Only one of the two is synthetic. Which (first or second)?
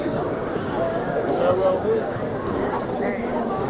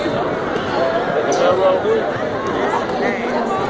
first